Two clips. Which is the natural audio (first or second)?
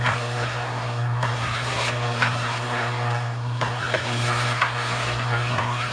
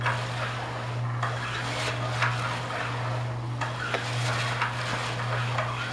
second